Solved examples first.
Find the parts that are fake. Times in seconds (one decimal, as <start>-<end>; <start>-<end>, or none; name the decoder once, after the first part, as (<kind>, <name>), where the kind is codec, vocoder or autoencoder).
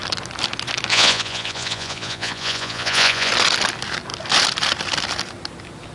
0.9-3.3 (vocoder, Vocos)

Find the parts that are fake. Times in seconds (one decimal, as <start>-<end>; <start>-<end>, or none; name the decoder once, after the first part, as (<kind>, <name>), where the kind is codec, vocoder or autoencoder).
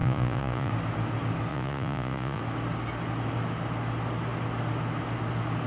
0.0-0.7 (vocoder, Vocos); 1.5-2.4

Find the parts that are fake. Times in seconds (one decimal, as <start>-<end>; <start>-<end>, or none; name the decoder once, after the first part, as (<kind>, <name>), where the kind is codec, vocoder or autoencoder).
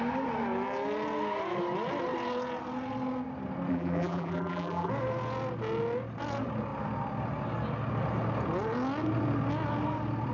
3.7-4.9 (vocoder, BigVGAN v2)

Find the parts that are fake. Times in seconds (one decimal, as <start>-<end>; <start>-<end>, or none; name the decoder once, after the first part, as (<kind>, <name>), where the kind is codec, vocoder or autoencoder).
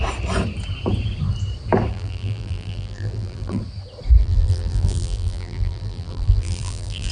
1.9-3.6 (vocoder, BigVGAN v2); 4.2-7.1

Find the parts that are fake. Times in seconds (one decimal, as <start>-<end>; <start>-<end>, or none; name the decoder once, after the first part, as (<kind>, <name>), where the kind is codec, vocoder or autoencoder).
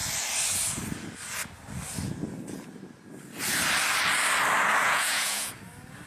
4.8-5.5 (vocoder, Vocos)